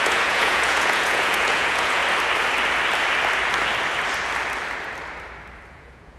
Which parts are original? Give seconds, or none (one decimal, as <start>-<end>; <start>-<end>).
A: 2.0-5.7